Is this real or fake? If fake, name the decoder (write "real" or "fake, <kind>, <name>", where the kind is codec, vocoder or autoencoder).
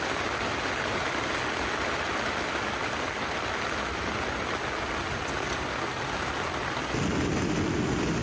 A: real